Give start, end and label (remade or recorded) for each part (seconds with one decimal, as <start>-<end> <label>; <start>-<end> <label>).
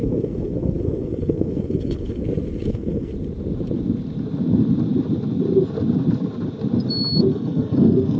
0.0-2.2 remade; 2.2-2.7 recorded; 2.7-3.1 remade; 3.1-7.3 recorded; 7.3-8.2 remade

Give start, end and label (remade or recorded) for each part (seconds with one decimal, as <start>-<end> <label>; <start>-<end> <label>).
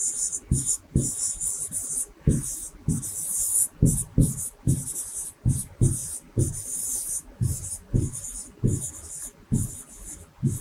0.0-10.6 recorded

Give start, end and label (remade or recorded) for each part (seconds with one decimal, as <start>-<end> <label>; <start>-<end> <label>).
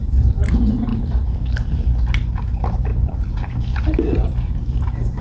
0.0-0.5 remade; 0.5-0.9 recorded; 0.9-1.9 remade; 1.9-2.9 recorded; 2.9-5.2 remade